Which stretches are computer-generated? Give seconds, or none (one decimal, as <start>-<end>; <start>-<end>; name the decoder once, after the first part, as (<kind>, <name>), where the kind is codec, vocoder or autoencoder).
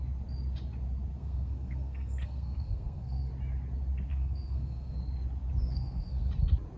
1.2-3.3 (codec, SNAC); 4.1-5.0; 5.6-6.3